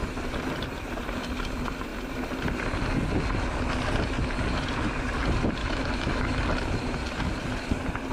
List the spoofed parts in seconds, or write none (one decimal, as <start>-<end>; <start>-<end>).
5.6-6.4